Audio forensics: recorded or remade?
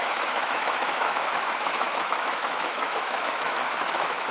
remade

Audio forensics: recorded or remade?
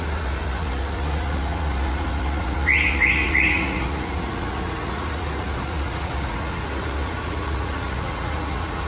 remade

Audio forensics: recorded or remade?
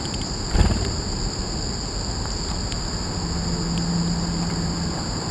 recorded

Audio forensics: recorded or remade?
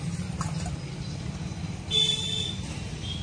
recorded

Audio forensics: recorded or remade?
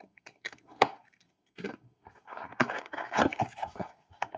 remade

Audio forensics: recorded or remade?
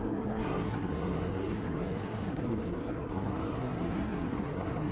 remade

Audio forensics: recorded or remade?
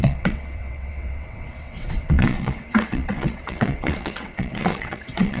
remade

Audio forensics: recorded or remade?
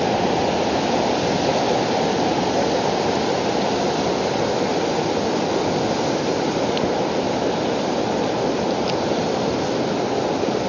recorded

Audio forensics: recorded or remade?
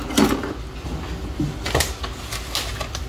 recorded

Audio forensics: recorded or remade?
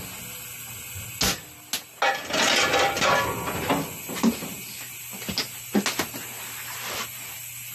recorded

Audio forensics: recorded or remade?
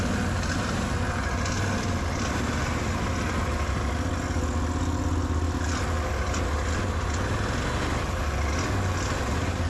recorded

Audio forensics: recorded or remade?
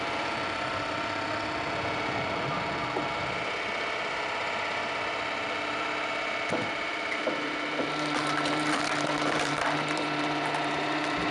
remade